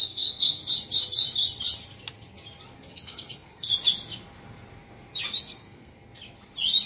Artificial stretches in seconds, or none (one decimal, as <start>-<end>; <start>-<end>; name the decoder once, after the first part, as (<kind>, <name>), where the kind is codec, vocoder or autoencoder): 0.0-0.6 (codec, SNAC); 2.9-3.7; 5.4-5.9